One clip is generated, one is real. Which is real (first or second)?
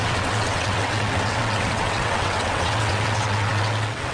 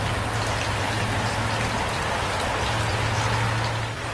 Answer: second